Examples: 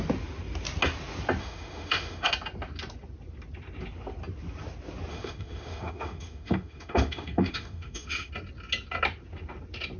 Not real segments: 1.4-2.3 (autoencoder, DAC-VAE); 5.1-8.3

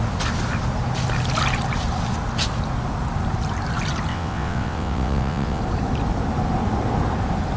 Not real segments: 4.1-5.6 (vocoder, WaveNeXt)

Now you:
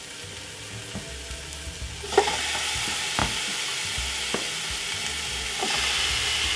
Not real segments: none

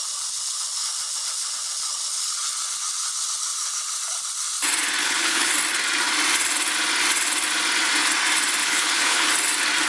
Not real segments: 5.0-5.5 (codec, HILCodec); 8.6-9.3